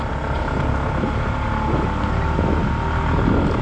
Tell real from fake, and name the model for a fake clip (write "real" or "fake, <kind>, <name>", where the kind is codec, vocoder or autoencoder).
real